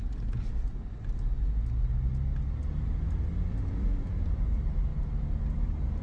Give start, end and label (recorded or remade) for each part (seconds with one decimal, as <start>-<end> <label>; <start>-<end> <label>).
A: 0.0-6.0 recorded